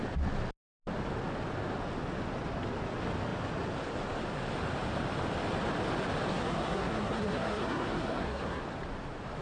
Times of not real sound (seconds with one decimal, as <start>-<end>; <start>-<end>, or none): 6.3-8.6